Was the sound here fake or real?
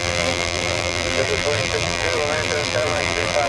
fake